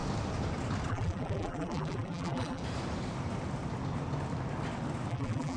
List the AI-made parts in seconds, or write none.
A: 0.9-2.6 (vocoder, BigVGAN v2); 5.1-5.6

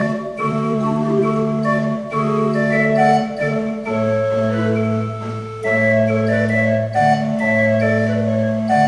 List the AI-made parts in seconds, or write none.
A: 0.0-1.2 (vocoder, BigVGAN v2)

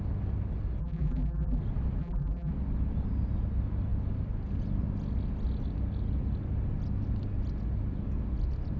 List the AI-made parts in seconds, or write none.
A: 0.8-1.6 (vocoder, BigVGAN v2); 2.0-2.5

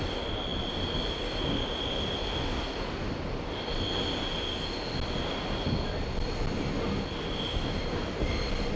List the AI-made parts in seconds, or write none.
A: none